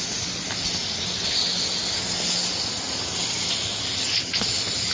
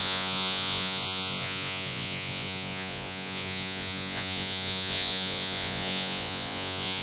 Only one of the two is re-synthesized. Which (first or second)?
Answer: second